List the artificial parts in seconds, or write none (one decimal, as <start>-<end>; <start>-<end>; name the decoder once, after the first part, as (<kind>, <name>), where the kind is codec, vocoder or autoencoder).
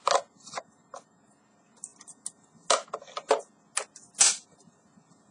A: none